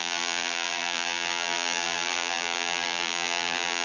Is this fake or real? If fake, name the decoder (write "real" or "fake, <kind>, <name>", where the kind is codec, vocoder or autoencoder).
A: fake, vocoder, BigVGAN v2